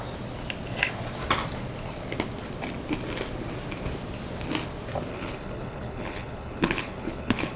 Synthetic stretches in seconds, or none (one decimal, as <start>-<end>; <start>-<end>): 5.1-7.6